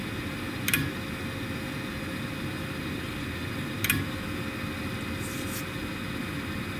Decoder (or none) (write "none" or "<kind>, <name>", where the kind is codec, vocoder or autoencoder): none